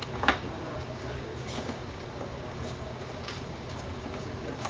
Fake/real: fake